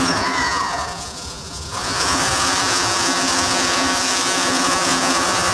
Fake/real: fake